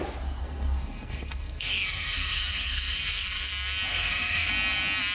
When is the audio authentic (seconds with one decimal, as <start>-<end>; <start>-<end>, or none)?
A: 0.0-0.4; 3.5-3.9; 4.5-5.1